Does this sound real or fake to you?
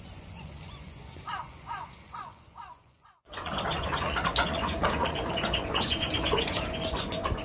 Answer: fake